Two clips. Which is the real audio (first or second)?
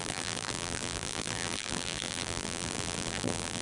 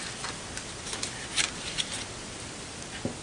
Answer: second